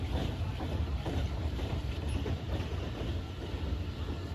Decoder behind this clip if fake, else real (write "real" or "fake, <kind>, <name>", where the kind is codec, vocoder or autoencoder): real